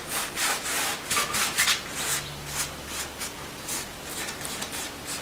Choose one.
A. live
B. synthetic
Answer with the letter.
A